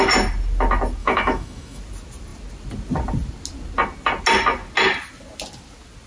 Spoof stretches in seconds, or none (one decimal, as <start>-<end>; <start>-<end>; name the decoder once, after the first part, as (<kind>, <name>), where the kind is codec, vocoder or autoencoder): 1.0-1.8 (autoencoder, DAC-VAE)